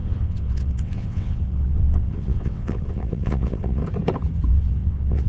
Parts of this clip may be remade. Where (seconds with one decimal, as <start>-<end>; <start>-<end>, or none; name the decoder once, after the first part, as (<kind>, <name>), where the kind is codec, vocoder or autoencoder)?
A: 0.0-3.8 (vocoder, WaveNeXt); 4.5-5.3